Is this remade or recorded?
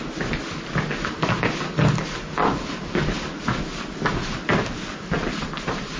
recorded